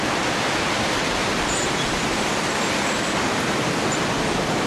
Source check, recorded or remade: recorded